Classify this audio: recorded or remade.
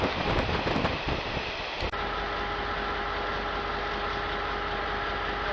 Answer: recorded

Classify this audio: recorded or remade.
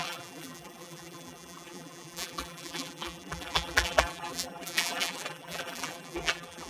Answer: remade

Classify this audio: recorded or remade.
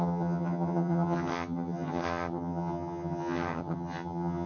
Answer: remade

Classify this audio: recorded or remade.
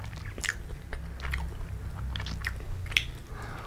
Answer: recorded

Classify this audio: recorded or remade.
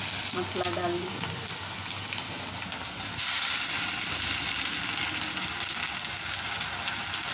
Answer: recorded